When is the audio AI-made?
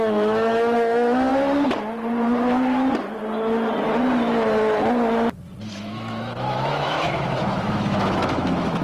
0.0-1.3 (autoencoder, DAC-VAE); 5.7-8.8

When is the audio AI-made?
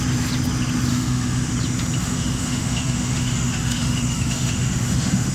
0.9-1.5 (autoencoder, DAC-VAE); 2.0-5.3